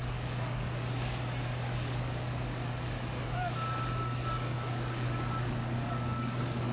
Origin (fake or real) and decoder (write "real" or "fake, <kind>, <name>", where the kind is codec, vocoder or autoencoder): fake, codec, DAC